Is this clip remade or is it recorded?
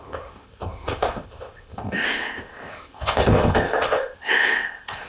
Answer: remade